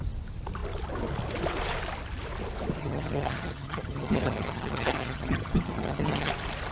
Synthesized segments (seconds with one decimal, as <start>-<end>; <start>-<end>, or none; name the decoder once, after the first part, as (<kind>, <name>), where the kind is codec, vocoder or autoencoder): 2.8-6.3 (vocoder, HiFi-GAN)